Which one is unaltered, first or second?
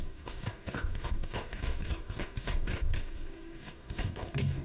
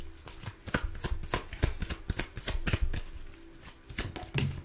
second